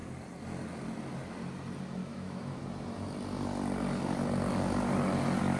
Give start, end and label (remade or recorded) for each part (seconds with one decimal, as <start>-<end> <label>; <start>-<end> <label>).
0.0-2.0 recorded; 2.0-2.6 remade; 2.6-5.6 recorded